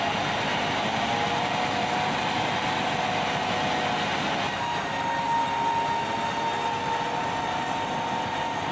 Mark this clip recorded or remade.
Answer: recorded